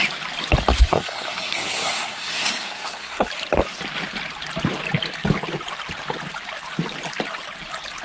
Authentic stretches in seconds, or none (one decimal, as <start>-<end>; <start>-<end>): 0.0-0.9; 3.3-8.0